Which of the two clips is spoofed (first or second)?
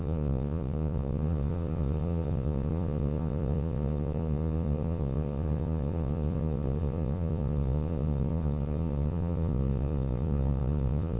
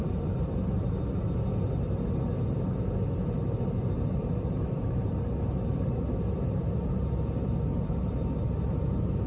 first